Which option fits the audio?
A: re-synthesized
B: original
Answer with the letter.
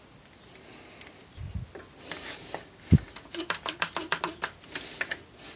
B